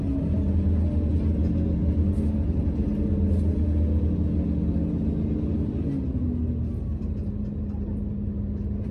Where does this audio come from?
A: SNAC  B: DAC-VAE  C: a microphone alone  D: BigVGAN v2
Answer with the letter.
C